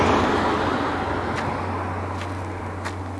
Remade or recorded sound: recorded